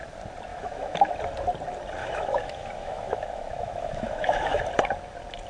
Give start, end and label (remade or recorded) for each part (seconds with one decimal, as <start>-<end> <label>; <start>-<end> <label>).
0.0-0.5 recorded; 0.5-1.1 remade; 1.1-2.0 recorded; 2.0-4.6 remade; 4.6-5.5 recorded